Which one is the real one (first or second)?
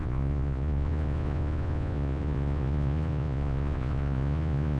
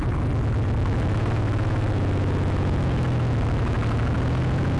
second